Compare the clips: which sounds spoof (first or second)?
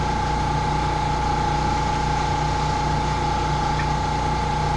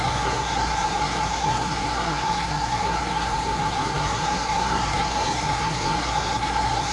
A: second